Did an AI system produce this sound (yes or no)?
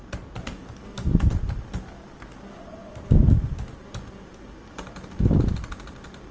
no